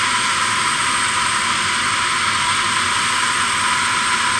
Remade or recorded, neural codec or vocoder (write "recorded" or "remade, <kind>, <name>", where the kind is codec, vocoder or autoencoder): recorded